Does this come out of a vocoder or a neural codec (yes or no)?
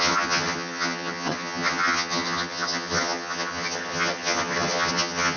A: yes